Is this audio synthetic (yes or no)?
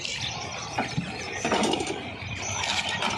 no